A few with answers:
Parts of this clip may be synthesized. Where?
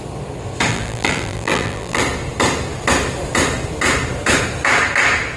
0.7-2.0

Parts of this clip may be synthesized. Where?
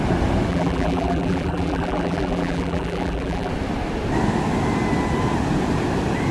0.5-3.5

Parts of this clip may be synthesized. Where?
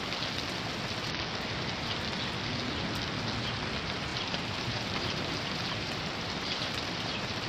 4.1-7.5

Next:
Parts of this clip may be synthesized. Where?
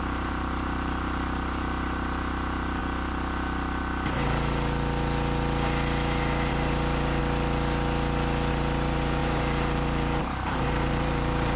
0.0-2.8; 6.5-7.2; 8.5-11.6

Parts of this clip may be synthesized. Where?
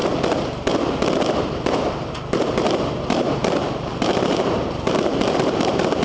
1.4-6.0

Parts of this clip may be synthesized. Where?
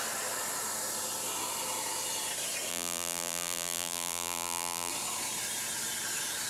2.7-4.9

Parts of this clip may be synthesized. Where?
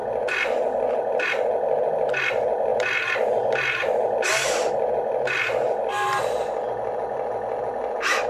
1.9-8.3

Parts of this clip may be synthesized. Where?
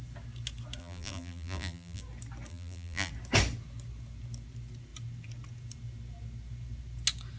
0.8-2.0; 2.5-3.1